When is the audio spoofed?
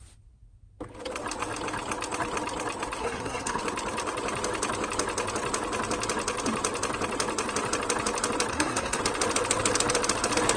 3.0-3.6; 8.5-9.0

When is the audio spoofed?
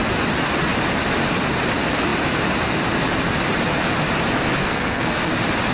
4.6-5.3